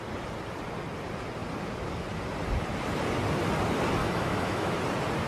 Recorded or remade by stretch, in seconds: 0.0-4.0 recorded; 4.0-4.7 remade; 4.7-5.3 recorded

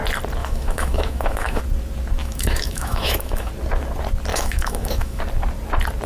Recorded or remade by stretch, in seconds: 0.0-0.4 recorded; 0.4-1.6 remade; 1.6-2.2 recorded; 2.2-3.5 remade; 3.5-4.3 recorded; 4.3-5.2 remade; 5.2-6.1 recorded

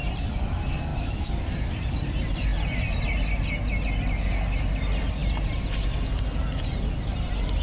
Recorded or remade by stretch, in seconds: 0.0-0.9 recorded; 0.9-1.5 remade; 1.5-7.6 recorded

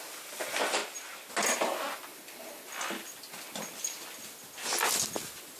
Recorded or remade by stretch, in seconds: 0.0-5.6 recorded

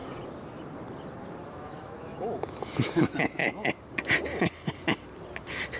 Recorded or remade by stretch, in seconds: 0.0-1.5 recorded; 1.5-3.4 remade; 3.4-5.8 recorded

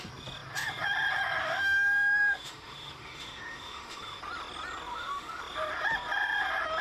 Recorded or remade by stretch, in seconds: 0.0-1.4 recorded; 1.4-4.2 remade; 4.2-4.9 recorded; 4.9-5.4 remade; 5.4-6.8 recorded